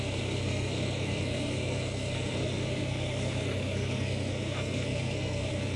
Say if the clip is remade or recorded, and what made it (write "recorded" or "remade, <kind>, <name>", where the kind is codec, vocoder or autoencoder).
remade, codec, SNAC